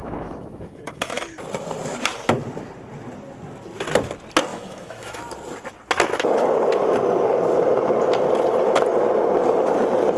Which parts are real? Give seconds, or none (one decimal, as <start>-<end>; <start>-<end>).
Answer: 1.2-4.5; 5.2-10.2